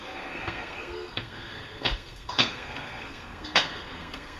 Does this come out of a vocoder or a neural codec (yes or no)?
yes